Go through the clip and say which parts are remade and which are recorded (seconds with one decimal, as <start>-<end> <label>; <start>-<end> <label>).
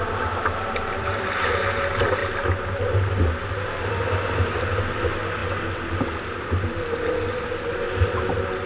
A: 0.0-8.7 recorded